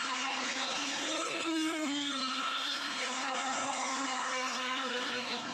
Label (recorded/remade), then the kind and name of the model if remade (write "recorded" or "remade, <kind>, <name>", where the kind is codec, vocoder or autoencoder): remade, codec, SNAC